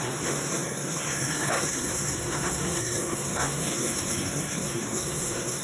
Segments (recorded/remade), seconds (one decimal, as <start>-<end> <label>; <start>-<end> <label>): 0.0-5.6 remade